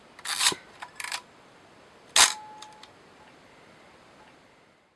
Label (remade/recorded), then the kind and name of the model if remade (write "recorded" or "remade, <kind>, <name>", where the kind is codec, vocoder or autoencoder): recorded